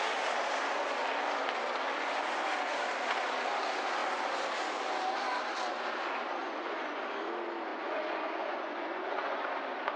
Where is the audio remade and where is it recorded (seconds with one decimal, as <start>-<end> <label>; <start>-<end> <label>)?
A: 0.0-6.4 recorded; 6.4-7.0 remade; 7.0-7.7 recorded; 7.7-9.4 remade; 9.4-10.0 recorded